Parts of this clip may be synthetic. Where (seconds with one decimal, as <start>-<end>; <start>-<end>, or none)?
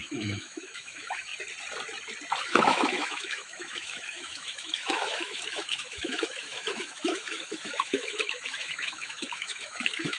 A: 0.0-1.3; 2.5-10.2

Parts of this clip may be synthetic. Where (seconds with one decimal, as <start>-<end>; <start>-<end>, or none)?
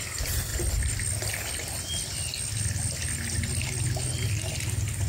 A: none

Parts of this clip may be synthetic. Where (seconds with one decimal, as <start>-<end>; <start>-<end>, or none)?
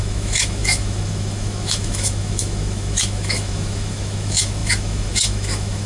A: 0.0-5.9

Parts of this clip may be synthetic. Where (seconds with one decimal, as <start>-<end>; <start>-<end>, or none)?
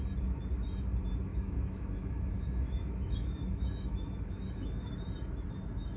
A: 1.3-4.9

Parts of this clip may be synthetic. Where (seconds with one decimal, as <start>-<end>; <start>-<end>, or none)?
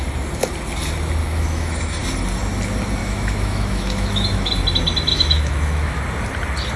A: 1.2-2.0; 3.0-4.5; 5.1-6.0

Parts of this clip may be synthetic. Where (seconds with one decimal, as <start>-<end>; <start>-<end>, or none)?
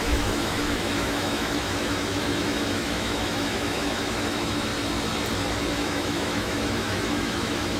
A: 0.0-4.7; 5.7-7.8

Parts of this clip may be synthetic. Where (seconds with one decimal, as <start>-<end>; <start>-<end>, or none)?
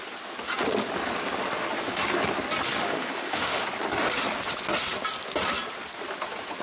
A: 2.8-3.6